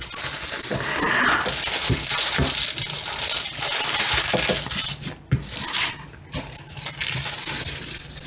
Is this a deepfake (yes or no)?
no